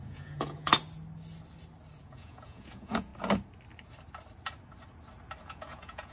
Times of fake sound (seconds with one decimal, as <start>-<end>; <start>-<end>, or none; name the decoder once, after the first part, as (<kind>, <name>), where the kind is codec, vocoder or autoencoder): 0.0-0.7 (vocoder, Vocos); 2.0-3.1; 5.4-6.1